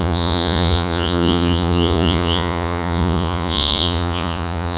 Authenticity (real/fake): fake